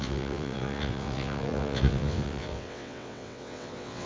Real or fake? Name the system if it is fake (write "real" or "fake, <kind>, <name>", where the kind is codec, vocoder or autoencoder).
fake, vocoder, WaveNeXt